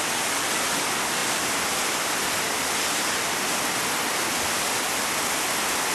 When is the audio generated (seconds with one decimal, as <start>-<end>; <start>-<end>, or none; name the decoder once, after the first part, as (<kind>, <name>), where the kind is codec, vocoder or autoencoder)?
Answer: none